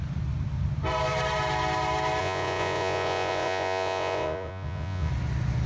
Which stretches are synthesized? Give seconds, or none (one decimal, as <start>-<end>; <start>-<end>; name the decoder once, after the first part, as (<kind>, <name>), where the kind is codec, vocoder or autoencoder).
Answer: 2.2-5.1 (vocoder, Vocos)